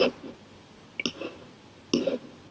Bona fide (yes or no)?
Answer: yes